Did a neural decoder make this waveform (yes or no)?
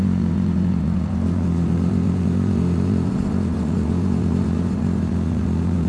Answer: yes